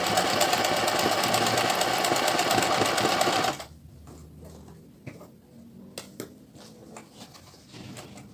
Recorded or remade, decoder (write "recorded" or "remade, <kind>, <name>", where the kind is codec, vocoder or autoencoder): recorded